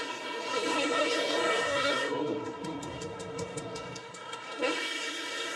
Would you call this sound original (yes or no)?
no